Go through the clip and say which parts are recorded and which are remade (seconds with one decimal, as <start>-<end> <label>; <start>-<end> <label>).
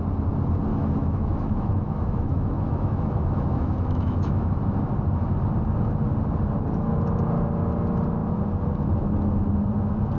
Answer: 0.0-0.7 recorded; 0.7-4.6 remade; 4.6-10.2 recorded